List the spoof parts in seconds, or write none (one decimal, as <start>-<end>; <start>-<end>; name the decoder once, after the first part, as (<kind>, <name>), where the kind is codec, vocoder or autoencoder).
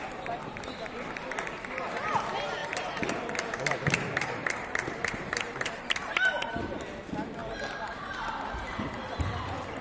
2.6-6.5 (vocoder, BigVGAN v2)